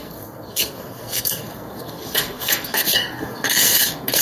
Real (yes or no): no